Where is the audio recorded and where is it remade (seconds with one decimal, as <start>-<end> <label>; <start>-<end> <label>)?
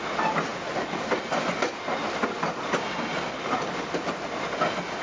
0.0-5.0 recorded